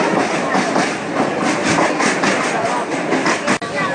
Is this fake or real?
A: real